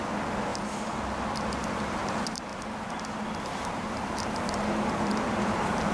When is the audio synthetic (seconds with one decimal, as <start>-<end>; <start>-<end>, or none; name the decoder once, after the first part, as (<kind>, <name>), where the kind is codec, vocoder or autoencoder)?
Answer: 0.0-0.5 (vocoder, BigVGAN v2); 1.7-2.5; 3.4-5.9